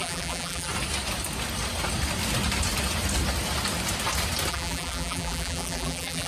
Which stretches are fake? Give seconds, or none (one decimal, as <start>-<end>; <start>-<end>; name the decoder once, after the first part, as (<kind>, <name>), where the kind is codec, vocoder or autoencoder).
0.0-0.7 (vocoder, BigVGAN v2); 4.5-6.3